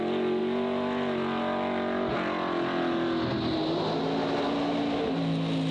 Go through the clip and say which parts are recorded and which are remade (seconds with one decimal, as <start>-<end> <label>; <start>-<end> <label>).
0.0-5.7 recorded